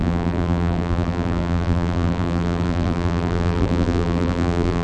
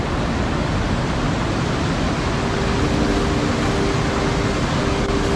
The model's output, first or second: first